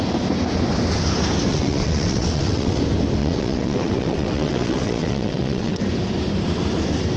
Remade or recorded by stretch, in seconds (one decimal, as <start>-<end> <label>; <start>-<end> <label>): 0.0-1.5 recorded; 1.5-2.8 remade; 2.8-3.2 recorded; 3.2-5.8 remade; 5.8-7.2 recorded